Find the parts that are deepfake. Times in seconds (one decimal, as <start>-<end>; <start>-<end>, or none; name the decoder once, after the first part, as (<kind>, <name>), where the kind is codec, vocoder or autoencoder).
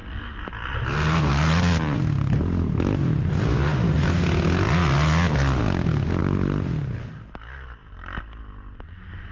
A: none